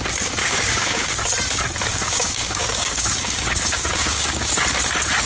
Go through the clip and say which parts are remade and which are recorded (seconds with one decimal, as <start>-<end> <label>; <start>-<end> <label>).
0.0-0.4 recorded; 0.4-1.2 remade; 1.2-1.9 recorded; 1.9-4.5 remade; 4.5-5.3 recorded